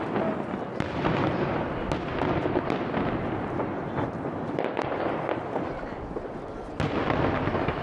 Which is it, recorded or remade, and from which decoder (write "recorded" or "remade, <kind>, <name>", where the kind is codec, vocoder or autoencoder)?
recorded